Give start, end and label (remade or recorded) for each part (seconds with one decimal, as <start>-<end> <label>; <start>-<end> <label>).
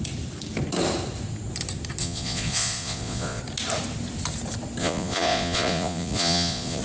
0.0-2.0 recorded; 2.0-3.4 remade; 3.4-4.8 recorded; 4.8-6.8 remade